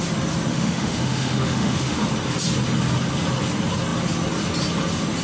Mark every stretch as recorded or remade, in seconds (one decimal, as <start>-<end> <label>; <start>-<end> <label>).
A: 0.0-0.5 recorded; 0.5-2.0 remade; 2.0-5.2 recorded